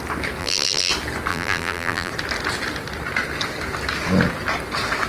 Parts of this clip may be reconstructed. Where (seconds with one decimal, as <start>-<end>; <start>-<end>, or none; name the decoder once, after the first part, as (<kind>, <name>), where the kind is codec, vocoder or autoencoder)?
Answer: 0.4-0.9 (vocoder, BigVGAN v2); 1.3-2.1